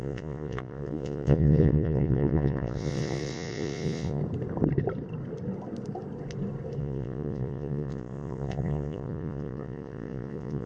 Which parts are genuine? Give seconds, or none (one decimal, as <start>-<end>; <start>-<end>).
4.2-6.8